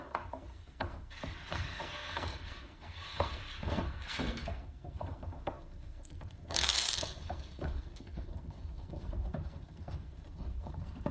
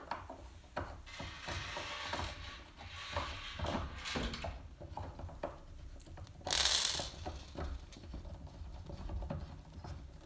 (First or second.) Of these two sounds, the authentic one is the second